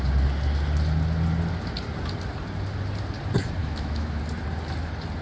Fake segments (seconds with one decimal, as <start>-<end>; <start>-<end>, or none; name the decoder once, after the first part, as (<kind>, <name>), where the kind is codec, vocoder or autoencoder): 3.6-4.2 (autoencoder, DAC-VAE)